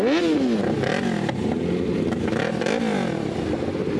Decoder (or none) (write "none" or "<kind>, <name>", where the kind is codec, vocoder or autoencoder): none